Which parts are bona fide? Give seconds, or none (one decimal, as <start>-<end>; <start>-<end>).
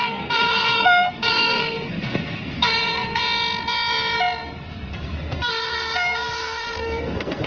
3.2-4.7